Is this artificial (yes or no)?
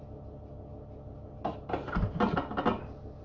no